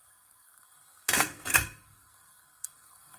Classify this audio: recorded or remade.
remade